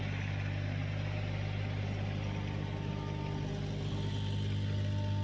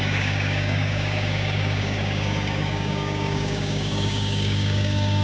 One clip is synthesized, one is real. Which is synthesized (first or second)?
second